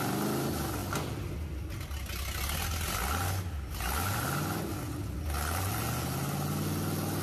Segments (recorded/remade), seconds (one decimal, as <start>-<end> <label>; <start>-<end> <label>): 0.0-7.2 recorded